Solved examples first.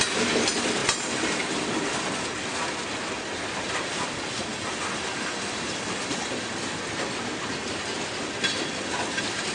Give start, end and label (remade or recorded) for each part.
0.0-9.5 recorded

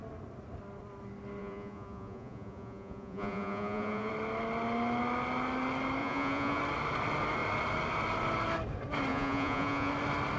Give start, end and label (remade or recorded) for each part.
0.0-1.4 recorded; 1.4-4.1 remade; 4.1-6.0 recorded; 6.0-6.6 remade; 6.6-9.1 recorded; 9.1-9.9 remade; 9.9-10.4 recorded

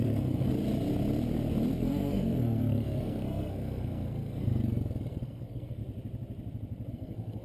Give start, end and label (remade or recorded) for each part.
0.0-0.5 remade; 0.5-1.7 recorded; 1.7-5.8 remade; 5.8-6.9 recorded; 6.9-7.4 remade

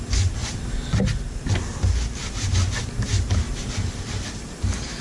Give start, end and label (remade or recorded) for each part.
0.0-5.0 recorded

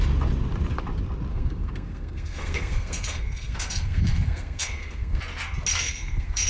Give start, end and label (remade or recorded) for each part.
0.0-1.3 recorded; 1.3-5.2 remade; 5.2-5.7 recorded; 5.7-6.5 remade